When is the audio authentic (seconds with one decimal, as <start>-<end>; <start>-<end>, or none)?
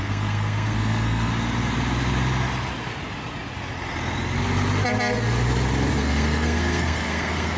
1.3-5.9